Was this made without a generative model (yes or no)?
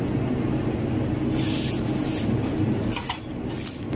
yes